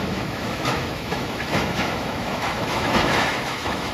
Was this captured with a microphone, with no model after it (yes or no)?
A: no